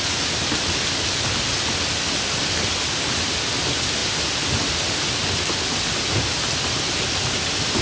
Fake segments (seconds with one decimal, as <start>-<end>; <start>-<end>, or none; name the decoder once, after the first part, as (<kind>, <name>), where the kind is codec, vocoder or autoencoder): none